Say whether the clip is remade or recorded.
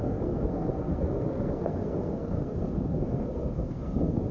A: remade